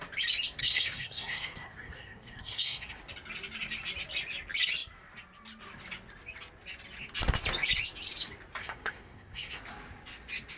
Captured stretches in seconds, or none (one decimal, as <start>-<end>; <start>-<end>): 0.0-0.6; 3.0-8.6; 9.6-10.6